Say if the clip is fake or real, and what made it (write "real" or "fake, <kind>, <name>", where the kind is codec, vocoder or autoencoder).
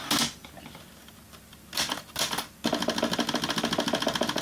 real